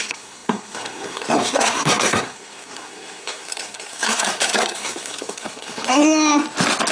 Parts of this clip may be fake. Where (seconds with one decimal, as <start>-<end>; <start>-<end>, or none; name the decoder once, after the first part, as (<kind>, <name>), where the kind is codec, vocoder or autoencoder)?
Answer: 0.0-6.0 (codec, SNAC)